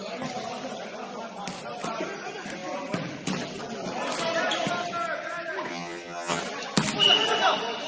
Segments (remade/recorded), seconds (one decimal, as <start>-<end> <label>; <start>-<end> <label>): 0.0-5.7 recorded; 5.7-6.4 remade; 6.4-7.9 recorded